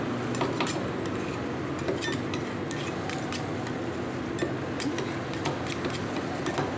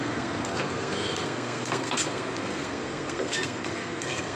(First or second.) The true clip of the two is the first